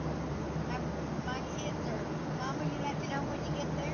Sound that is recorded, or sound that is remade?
recorded